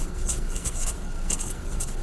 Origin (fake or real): fake